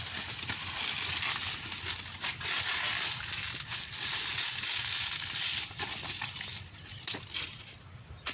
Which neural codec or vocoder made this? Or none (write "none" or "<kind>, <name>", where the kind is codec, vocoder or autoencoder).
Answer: none